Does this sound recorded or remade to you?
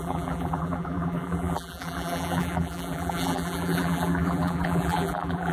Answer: remade